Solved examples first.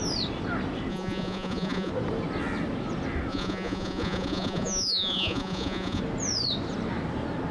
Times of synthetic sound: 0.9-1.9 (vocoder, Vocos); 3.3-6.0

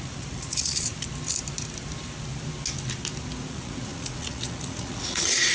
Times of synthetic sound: 0.0-0.9 (vocoder, Vocos); 3.5-5.5

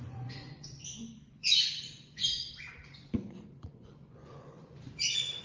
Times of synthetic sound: 0.0-5.4 (vocoder, Vocos)